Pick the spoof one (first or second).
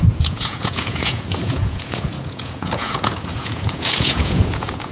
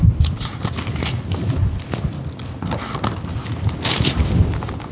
first